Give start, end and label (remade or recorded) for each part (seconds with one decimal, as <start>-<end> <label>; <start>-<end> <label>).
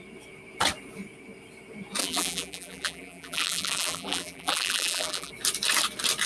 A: 0.0-2.0 recorded; 2.0-5.3 remade; 5.3-6.3 recorded